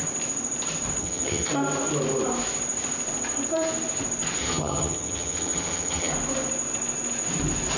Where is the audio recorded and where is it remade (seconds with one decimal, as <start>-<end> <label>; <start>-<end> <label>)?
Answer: 0.0-1.0 recorded; 1.0-1.5 remade; 1.5-4.4 recorded; 4.4-6.1 remade; 6.1-7.8 recorded